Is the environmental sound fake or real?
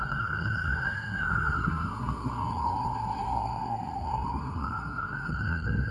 fake